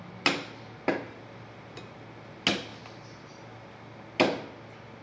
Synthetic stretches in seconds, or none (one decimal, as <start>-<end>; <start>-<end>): none